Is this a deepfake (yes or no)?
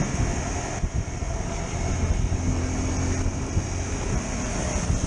no